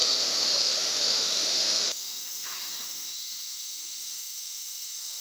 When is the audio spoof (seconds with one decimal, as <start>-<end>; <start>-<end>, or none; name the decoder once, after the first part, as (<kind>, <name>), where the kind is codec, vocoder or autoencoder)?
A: 0.0-5.2 (autoencoder, DAC-VAE)